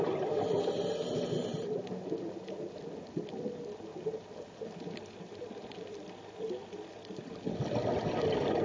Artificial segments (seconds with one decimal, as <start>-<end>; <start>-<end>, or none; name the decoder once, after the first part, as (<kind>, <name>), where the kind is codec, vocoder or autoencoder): none